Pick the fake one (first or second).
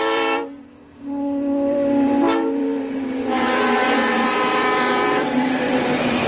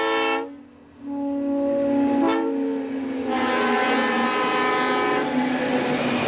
first